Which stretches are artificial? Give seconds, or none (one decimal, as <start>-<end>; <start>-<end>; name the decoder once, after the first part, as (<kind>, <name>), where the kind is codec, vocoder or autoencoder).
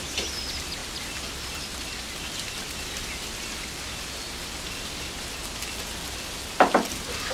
none